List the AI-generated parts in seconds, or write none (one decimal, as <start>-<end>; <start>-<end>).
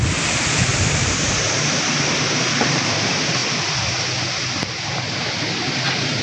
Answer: 0.7-2.9